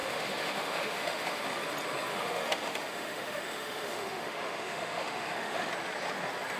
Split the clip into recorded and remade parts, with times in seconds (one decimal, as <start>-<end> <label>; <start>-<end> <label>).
0.0-1.4 remade; 1.4-2.1 recorded; 2.1-5.7 remade; 5.7-6.6 recorded

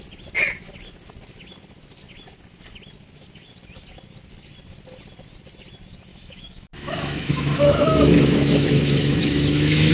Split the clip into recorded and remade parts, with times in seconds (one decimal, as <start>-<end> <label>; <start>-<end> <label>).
0.0-6.1 recorded; 6.1-9.9 remade